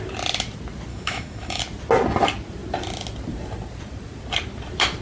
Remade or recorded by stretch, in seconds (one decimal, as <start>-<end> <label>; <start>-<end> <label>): 0.0-0.9 recorded; 0.9-1.6 remade; 1.6-5.0 recorded